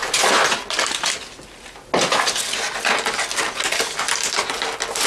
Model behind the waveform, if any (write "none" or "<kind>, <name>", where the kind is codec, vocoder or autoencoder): none